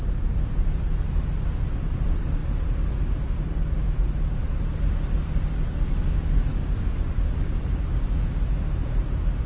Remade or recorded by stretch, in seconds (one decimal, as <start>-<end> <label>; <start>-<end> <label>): 0.0-6.5 recorded; 6.5-8.3 remade; 8.3-9.5 recorded